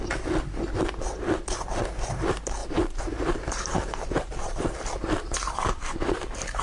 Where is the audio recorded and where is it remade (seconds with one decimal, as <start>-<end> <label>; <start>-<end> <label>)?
0.0-2.6 recorded; 2.6-6.6 remade